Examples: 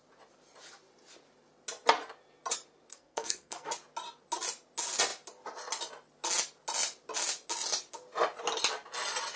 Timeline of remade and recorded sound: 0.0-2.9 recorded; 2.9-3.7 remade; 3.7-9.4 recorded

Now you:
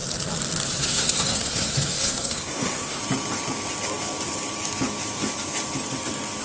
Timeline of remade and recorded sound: 0.0-0.8 recorded; 0.8-3.0 remade; 3.0-6.4 recorded

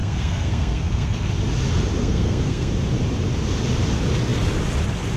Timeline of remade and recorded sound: 0.0-1.3 remade; 1.3-2.0 recorded; 2.0-2.7 remade; 2.7-5.2 recorded